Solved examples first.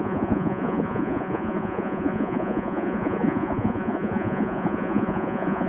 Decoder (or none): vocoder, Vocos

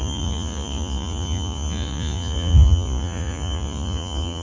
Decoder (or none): vocoder, Vocos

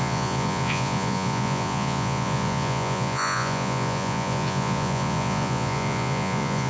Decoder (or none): vocoder, Vocos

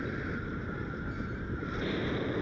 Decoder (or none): none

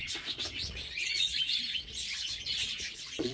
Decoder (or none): vocoder, Vocos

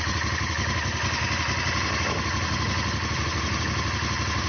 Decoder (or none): none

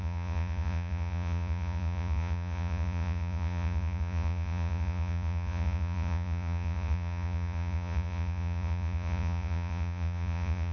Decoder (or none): vocoder, Vocos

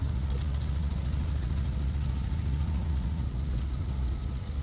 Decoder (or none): vocoder, Vocos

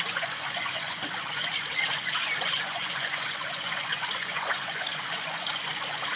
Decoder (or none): vocoder, Vocos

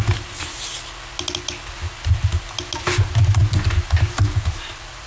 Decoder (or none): none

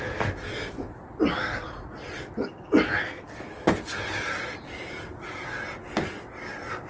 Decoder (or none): none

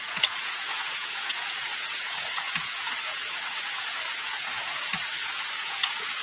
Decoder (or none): vocoder, Vocos